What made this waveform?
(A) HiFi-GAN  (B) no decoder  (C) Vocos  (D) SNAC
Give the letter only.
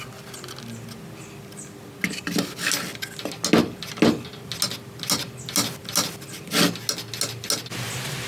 B